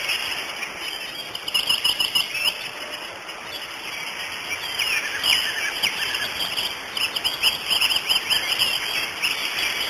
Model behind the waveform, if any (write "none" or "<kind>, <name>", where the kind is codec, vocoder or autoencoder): none